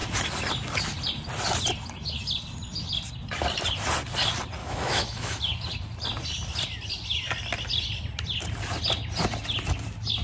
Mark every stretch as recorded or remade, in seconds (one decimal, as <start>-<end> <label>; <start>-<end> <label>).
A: 0.0-4.6 recorded; 4.6-5.4 remade; 5.4-10.2 recorded